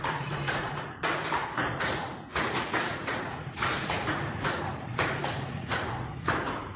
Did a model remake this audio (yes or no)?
yes